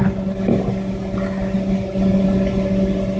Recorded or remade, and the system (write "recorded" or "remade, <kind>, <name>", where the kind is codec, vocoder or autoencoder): recorded